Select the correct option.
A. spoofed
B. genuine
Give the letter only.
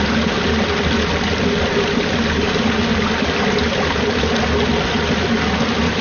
B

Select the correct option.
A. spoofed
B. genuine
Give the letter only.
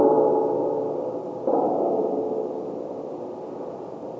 A